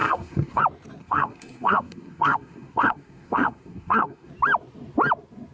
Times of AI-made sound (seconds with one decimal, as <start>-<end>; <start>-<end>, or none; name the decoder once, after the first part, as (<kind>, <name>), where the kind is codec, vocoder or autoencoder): 0.0-0.6 (codec, SNAC); 1.0-4.3